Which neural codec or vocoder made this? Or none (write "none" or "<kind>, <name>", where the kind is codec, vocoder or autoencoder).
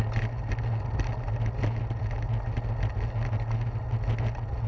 none